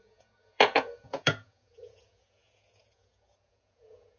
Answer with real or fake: fake